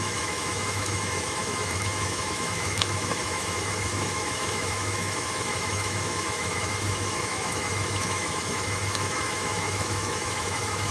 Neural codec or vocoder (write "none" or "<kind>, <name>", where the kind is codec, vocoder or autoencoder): autoencoder, DAC-VAE